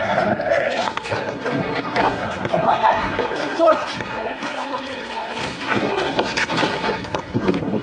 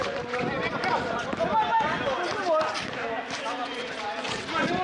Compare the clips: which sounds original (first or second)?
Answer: second